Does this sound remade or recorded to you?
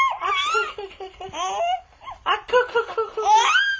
recorded